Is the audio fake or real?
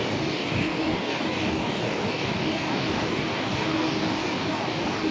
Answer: fake